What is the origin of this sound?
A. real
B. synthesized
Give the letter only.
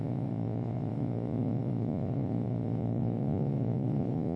B